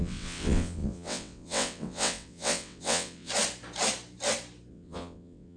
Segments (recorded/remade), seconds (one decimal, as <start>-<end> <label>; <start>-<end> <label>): 0.0-3.3 remade; 3.3-4.7 recorded; 4.7-5.6 remade